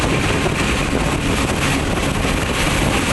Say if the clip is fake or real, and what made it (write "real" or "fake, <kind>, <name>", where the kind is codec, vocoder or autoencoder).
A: real